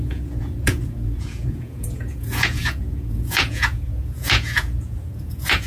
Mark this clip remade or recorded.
remade